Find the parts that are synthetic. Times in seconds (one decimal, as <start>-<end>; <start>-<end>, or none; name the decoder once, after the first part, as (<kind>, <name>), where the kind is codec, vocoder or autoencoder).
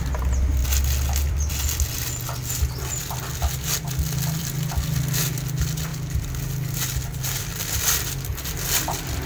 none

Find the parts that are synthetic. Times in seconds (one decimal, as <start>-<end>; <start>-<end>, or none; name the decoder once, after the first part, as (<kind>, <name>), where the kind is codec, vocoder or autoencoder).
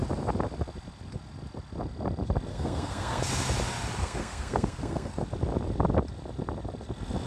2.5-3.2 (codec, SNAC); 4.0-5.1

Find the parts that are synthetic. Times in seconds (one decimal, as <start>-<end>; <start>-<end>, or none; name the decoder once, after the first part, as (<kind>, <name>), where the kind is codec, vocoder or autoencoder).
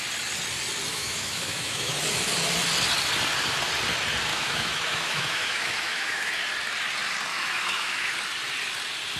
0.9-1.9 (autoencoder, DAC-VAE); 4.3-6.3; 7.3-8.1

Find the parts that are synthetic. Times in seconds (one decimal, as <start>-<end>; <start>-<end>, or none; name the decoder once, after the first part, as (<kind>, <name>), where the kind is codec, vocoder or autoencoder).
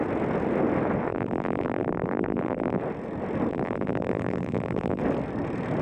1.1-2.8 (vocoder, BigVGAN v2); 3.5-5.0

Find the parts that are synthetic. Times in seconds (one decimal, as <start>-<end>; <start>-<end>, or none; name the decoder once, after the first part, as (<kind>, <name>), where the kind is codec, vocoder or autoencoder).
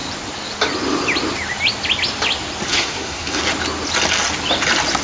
2.7-3.4 (codec, SNAC)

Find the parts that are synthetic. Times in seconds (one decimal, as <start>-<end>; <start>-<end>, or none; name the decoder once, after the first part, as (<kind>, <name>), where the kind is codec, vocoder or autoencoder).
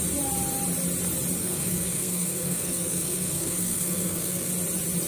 1.4-4.5 (codec, SNAC)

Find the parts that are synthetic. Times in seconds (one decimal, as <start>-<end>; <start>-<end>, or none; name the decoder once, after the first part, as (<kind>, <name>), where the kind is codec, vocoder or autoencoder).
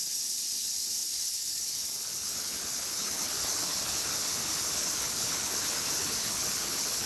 0.0-7.1 (codec, HILCodec)